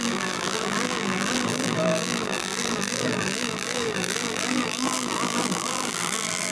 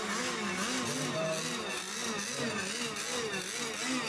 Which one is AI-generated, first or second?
first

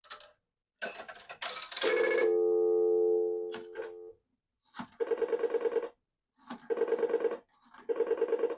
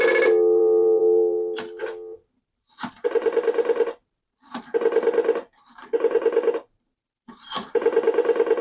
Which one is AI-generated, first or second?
second